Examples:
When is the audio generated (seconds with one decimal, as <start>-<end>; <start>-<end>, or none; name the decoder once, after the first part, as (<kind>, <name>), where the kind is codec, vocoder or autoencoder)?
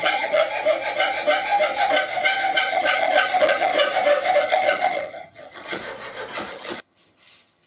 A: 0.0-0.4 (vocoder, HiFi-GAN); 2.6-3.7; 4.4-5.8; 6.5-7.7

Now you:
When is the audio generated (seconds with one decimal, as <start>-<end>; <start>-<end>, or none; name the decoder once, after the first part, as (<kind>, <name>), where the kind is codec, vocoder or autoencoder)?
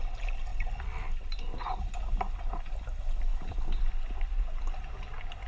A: none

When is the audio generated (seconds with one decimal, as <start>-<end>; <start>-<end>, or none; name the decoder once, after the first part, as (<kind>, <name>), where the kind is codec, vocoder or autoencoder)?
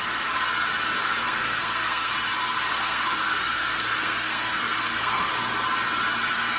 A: 1.0-2.1 (codec, SNAC); 2.7-5.3